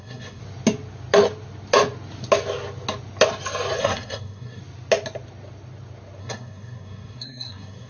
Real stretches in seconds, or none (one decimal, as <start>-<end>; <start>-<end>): 0.4-3.8; 4.6-6.2